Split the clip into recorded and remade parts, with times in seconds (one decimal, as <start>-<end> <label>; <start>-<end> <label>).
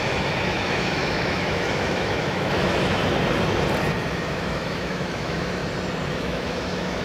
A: 0.0-3.0 remade; 3.0-4.1 recorded; 4.1-5.6 remade; 5.6-6.1 recorded; 6.1-7.0 remade